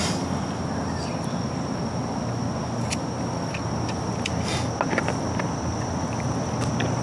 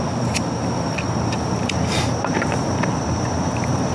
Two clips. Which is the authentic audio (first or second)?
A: first